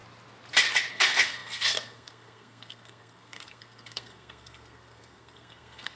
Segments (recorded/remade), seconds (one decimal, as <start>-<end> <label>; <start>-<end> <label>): 0.0-0.9 recorded; 0.9-6.0 remade